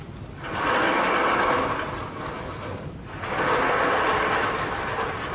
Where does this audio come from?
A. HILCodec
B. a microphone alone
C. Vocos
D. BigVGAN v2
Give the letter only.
B